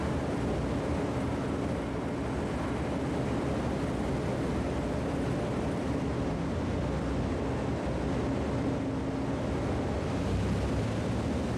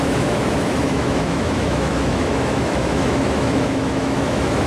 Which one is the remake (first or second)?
second